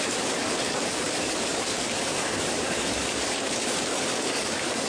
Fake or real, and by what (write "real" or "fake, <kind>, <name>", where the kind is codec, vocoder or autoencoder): fake, codec, DAC